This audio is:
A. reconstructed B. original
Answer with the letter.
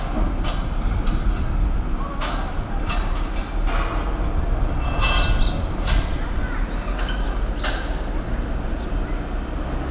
B